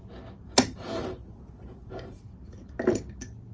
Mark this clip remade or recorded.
recorded